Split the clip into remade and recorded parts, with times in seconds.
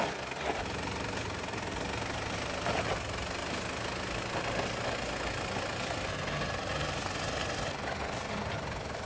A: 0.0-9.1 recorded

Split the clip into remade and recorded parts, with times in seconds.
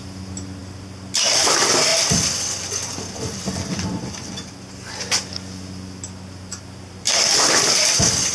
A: 0.0-8.3 recorded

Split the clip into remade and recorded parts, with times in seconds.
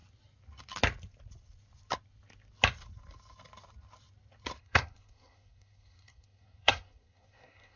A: 0.0-4.6 recorded; 4.6-7.8 remade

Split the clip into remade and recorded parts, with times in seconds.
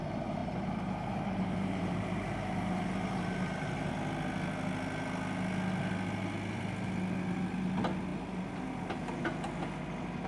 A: 0.0-0.4 recorded; 0.4-3.9 remade; 3.9-10.3 recorded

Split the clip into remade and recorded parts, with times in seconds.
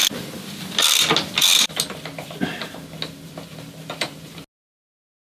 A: 0.0-5.3 recorded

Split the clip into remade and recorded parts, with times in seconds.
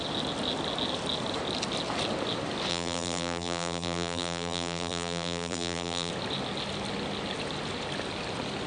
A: 0.0-2.7 recorded; 2.7-6.1 remade; 6.1-8.7 recorded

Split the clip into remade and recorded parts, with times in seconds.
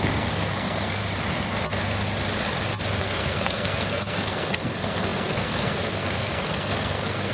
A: 0.0-1.0 remade; 1.0-3.0 recorded; 3.0-7.3 remade